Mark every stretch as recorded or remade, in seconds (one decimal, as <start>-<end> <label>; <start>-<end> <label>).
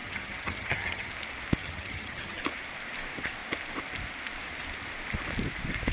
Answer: 0.0-1.1 remade; 1.1-1.6 recorded; 1.6-2.4 remade; 2.4-5.9 recorded